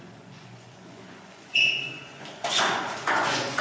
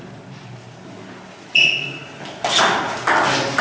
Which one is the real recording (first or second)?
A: second